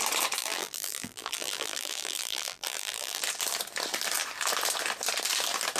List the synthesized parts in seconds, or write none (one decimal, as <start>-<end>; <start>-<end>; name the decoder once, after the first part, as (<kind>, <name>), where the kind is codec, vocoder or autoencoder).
0.4-3.2 (vocoder, BigVGAN v2)